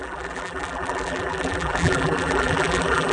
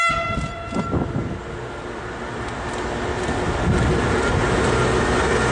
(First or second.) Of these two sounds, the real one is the second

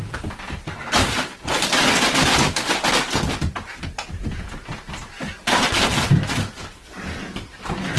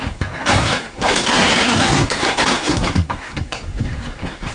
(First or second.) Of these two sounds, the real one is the first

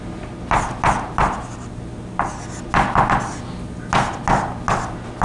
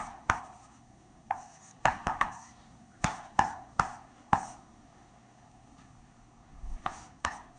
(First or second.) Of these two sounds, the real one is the first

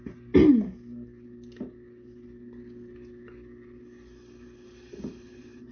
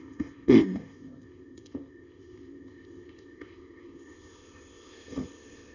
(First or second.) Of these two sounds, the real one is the first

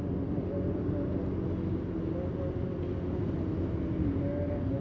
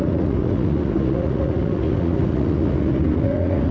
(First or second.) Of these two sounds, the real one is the first